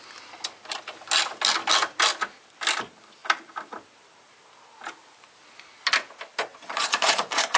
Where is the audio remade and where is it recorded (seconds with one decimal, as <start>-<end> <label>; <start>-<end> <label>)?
0.0-6.5 recorded; 6.5-7.6 remade